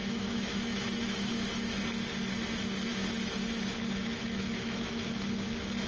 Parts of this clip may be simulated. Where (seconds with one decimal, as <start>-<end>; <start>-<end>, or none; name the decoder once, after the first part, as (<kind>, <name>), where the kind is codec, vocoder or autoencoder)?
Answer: 0.0-1.8 (autoencoder, DAC-VAE); 2.9-5.5